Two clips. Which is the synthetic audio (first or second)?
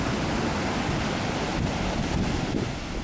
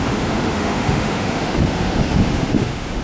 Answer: second